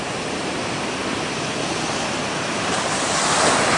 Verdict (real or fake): real